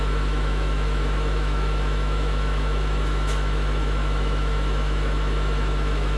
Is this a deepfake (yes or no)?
yes